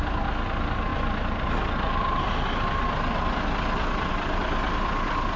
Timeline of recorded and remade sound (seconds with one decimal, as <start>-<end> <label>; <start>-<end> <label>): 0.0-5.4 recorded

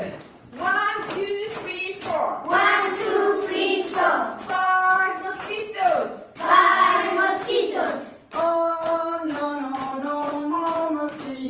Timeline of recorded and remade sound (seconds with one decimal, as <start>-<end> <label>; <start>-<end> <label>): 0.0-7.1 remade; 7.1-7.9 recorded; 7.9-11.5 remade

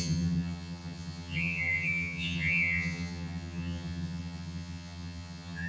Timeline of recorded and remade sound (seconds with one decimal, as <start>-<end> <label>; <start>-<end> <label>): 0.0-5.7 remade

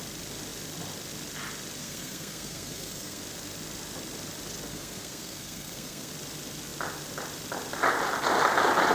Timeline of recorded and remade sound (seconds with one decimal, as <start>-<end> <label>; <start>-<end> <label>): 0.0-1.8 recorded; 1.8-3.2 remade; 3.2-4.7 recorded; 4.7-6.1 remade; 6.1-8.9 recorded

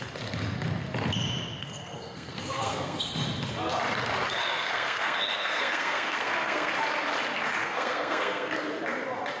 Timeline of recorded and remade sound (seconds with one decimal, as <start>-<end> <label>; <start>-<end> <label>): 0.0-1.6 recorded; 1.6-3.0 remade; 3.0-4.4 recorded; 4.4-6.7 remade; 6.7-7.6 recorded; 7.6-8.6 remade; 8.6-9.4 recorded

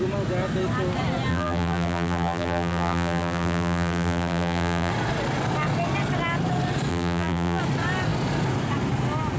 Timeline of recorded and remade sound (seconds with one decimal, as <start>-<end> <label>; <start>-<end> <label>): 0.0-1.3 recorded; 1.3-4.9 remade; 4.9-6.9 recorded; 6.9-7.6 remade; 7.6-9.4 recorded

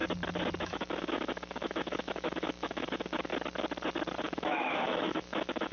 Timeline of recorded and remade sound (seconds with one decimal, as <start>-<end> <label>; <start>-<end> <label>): 0.0-0.6 recorded; 0.6-3.3 remade; 3.3-4.2 recorded; 4.2-5.7 remade

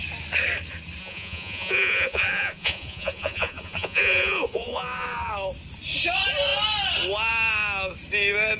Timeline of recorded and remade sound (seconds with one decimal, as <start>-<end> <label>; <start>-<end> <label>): 0.0-1.0 recorded; 1.0-5.3 remade; 5.3-8.6 recorded